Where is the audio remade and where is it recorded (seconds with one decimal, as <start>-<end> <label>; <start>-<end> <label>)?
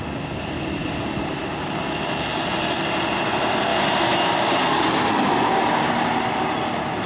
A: 0.0-0.8 recorded; 0.8-1.4 remade; 1.4-2.3 recorded; 2.3-3.0 remade; 3.0-3.7 recorded; 3.7-4.9 remade; 4.9-7.1 recorded